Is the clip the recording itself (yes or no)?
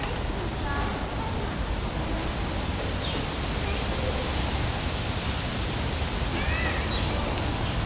yes